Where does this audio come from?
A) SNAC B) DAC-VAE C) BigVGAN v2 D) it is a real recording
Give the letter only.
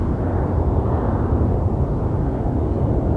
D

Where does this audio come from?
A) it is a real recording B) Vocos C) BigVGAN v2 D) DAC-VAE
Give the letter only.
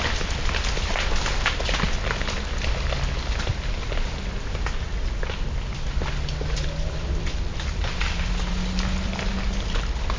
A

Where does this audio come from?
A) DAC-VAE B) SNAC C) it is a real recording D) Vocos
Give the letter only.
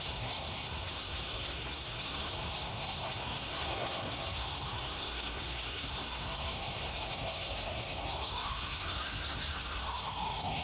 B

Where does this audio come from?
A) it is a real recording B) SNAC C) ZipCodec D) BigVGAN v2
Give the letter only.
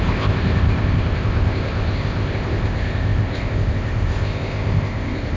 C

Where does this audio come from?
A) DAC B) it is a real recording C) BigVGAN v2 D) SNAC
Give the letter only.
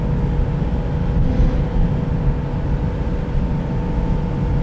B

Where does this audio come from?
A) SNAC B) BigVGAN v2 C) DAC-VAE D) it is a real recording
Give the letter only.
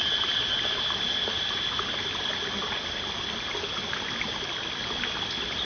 D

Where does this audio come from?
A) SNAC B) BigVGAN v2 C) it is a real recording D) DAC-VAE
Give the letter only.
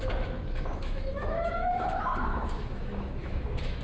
D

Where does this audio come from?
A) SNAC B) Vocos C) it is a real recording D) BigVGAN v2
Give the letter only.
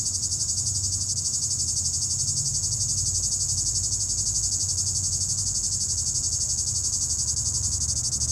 C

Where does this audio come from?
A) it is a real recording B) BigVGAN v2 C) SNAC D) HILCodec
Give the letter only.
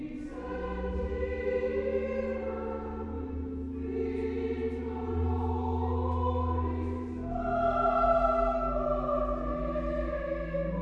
A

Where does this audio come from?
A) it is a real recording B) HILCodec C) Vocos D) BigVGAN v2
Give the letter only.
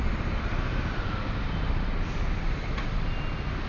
A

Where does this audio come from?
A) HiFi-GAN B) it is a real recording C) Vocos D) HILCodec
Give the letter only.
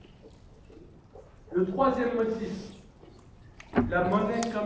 B